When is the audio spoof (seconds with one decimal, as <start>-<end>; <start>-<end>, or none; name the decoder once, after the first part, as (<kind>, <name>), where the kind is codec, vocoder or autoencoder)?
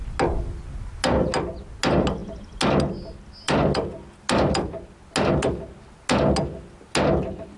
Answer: none